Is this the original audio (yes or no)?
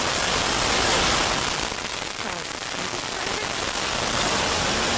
yes